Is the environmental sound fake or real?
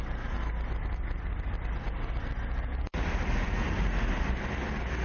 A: real